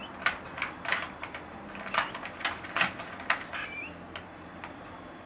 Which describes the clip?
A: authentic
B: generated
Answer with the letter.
A